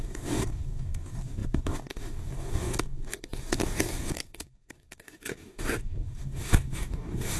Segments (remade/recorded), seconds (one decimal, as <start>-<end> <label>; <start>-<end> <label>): 0.0-7.4 remade